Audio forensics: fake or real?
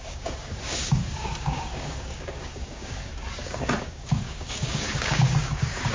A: fake